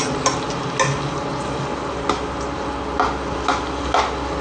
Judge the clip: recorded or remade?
recorded